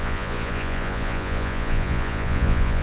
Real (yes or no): no